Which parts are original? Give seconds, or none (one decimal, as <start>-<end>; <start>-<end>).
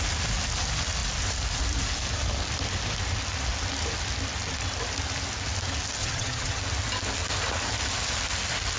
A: 0.0-6.0; 6.6-8.8